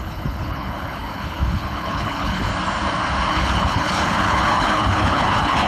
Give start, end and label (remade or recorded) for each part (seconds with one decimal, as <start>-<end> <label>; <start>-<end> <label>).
0.0-2.5 remade; 2.5-3.3 recorded; 3.3-5.7 remade